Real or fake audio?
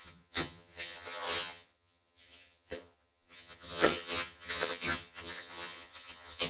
fake